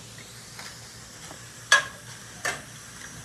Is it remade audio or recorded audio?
recorded